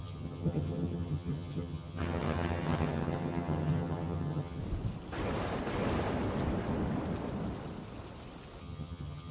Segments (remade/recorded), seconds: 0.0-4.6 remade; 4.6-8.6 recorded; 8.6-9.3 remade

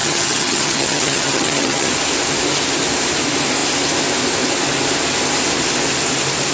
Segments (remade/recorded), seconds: 0.0-1.9 remade; 1.9-6.5 recorded

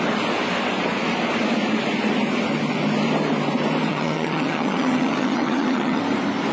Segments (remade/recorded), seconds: 0.0-3.9 recorded; 3.9-6.0 remade; 6.0-6.5 recorded